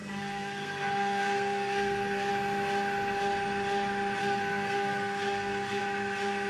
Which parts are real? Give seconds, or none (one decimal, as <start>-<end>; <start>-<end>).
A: 2.3-4.2; 5.8-6.5